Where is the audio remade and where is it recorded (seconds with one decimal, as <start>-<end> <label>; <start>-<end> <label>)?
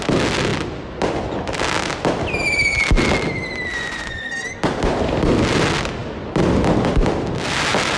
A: 0.0-3.7 recorded; 3.7-4.3 remade; 4.3-8.0 recorded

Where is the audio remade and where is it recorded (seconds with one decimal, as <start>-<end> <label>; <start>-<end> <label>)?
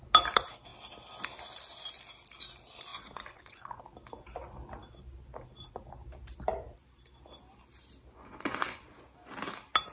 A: 0.0-2.9 recorded; 2.9-3.8 remade; 3.8-8.1 recorded; 8.1-8.8 remade; 8.8-9.9 recorded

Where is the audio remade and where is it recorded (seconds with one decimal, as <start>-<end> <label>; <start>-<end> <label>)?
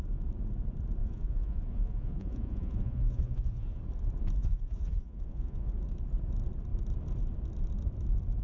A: 0.0-1.0 recorded; 1.0-3.8 remade; 3.8-4.4 recorded; 4.4-5.7 remade; 5.7-8.4 recorded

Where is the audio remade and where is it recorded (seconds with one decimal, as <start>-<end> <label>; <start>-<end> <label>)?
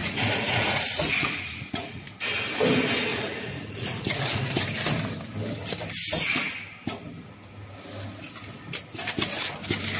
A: 0.0-2.2 remade; 2.2-3.1 recorded; 3.1-4.4 remade; 4.4-10.0 recorded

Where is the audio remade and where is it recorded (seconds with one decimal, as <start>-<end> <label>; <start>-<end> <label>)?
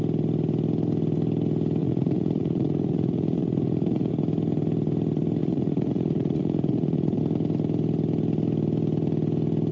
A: 0.0-1.8 recorded; 1.8-4.1 remade; 4.1-5.4 recorded; 5.4-7.2 remade; 7.2-9.7 recorded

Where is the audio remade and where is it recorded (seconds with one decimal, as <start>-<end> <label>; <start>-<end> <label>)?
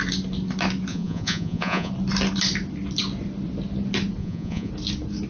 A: 0.0-0.9 recorded; 0.9-1.9 remade; 1.9-4.2 recorded; 4.2-4.7 remade; 4.7-5.3 recorded